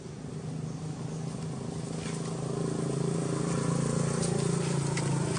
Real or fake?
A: real